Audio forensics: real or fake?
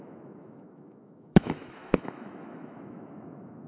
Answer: fake